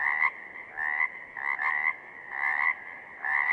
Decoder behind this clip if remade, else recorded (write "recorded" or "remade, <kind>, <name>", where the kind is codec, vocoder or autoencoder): recorded